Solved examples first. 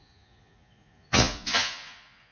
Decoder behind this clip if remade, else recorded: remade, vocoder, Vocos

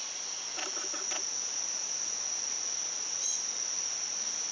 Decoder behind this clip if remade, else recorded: recorded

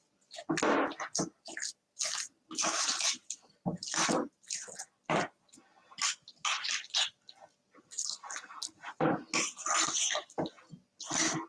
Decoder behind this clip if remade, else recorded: recorded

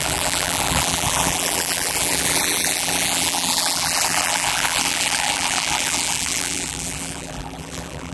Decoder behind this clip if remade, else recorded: remade, vocoder, BigVGAN v2